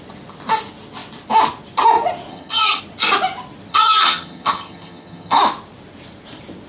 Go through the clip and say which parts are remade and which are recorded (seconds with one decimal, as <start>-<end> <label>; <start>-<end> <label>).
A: 0.0-2.3 recorded; 2.3-2.8 remade; 2.8-3.7 recorded; 3.7-5.4 remade; 5.4-6.7 recorded